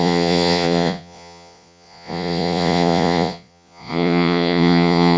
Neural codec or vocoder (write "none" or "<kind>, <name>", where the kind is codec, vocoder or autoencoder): vocoder, Vocos